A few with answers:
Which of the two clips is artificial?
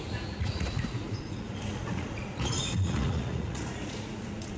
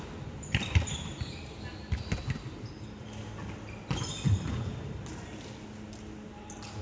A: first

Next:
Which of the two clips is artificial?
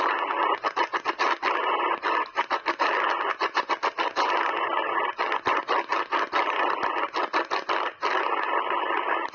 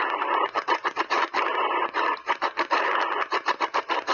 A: second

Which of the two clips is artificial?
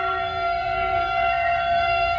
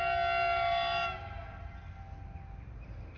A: first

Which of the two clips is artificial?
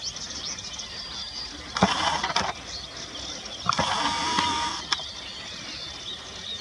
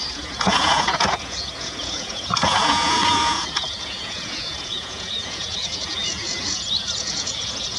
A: second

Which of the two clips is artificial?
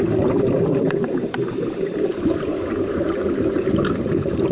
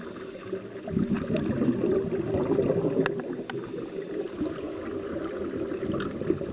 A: first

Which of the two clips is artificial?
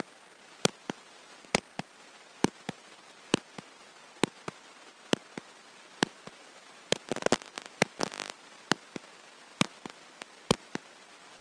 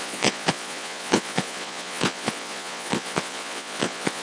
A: second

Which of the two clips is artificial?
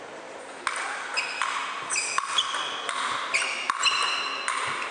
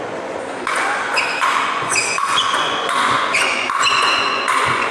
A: second